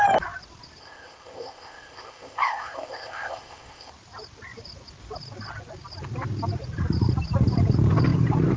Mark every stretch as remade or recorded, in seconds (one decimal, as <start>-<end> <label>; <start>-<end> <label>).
0.0-0.8 recorded; 0.8-3.9 remade; 3.9-8.6 recorded